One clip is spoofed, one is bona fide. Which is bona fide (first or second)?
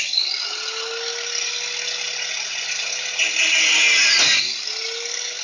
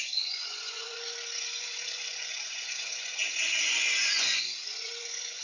first